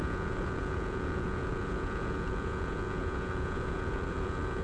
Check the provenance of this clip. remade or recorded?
remade